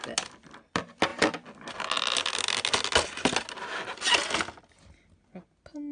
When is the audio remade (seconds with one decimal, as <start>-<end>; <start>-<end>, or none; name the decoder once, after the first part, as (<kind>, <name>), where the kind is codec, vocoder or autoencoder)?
none